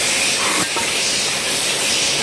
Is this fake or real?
real